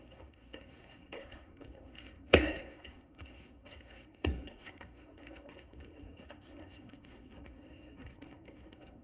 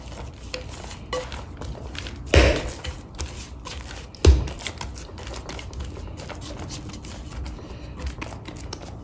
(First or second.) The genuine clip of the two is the second